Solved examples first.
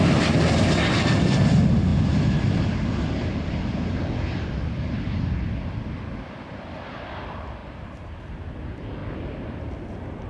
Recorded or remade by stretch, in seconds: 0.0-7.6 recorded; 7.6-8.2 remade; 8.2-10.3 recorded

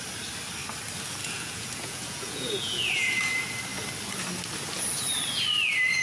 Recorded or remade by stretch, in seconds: 0.0-1.2 recorded; 1.2-3.1 remade; 3.1-6.0 recorded

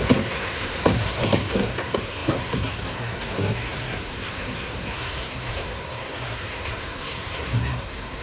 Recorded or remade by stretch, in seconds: 0.0-8.2 remade